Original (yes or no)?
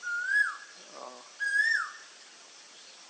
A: no